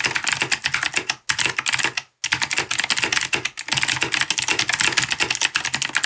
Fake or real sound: real